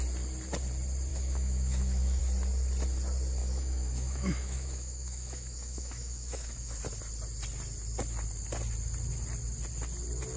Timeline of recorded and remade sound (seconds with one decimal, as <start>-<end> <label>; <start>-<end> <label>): 0.0-1.1 recorded; 1.1-2.2 remade; 2.2-3.4 recorded; 3.4-6.8 remade; 6.8-10.4 recorded

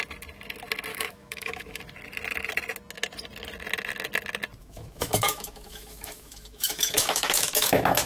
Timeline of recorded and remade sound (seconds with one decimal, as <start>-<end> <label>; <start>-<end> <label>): 0.0-0.9 recorded; 0.9-1.8 remade; 1.8-4.6 recorded; 4.6-8.1 remade

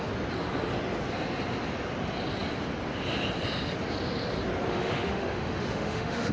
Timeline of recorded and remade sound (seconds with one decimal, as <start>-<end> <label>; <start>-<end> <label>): 0.0-4.7 recorded; 4.7-6.3 remade

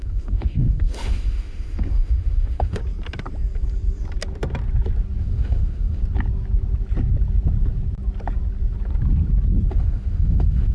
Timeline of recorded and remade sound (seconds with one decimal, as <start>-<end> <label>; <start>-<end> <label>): 0.0-2.8 remade; 2.8-5.2 recorded; 5.2-6.0 remade; 6.0-9.7 recorded; 9.7-10.7 remade

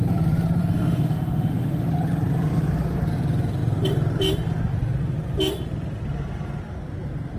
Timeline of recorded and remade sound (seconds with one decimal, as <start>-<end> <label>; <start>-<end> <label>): 0.0-0.6 recorded; 0.6-1.9 remade; 1.9-7.4 recorded

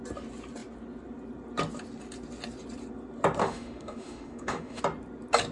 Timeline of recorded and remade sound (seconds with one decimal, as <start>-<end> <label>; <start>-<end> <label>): 0.0-3.4 recorded; 3.4-4.8 remade; 4.8-5.5 recorded